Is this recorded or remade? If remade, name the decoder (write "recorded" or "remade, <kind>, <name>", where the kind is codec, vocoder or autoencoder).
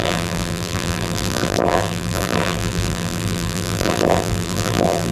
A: remade, vocoder, BigVGAN v2